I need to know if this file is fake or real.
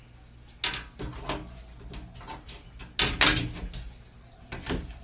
real